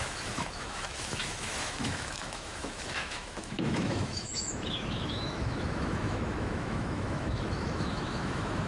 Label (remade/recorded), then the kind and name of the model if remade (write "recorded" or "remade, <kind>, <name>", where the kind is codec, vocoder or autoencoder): remade, autoencoder, DAC-VAE